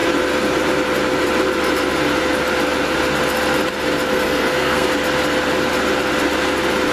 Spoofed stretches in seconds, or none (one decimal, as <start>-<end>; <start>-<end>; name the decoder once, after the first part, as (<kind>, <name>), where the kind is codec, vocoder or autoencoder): 4.1-4.9 (codec, SNAC)